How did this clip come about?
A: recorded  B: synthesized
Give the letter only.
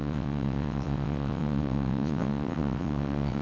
B